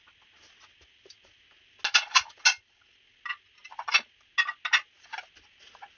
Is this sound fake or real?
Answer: real